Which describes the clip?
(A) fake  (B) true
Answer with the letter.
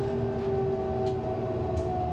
B